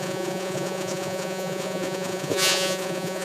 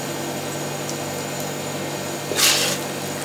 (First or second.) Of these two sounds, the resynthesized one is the first